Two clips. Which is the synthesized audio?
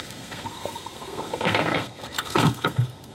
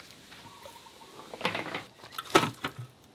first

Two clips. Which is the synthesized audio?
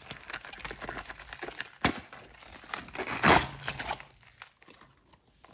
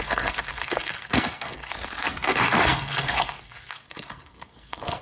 second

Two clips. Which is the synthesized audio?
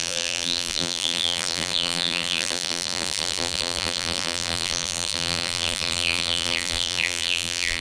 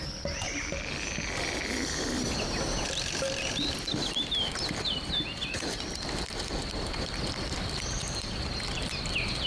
first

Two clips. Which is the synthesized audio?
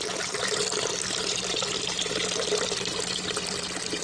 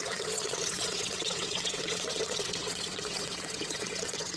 second